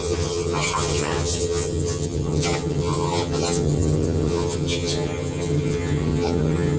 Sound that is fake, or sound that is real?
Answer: fake